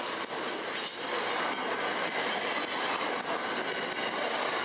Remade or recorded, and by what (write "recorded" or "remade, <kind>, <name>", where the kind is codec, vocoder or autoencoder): recorded